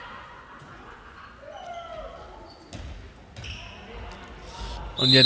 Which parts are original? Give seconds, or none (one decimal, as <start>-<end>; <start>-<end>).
1.7-5.3